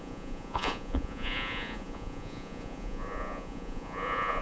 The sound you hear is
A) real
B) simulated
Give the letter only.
B